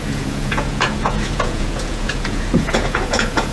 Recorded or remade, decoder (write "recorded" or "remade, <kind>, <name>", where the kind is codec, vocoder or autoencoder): remade, vocoder, Vocos